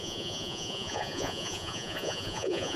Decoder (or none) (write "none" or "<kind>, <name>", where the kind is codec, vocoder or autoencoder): vocoder, Vocos